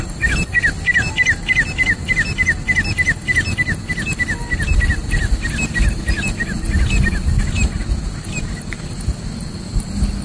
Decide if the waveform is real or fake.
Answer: real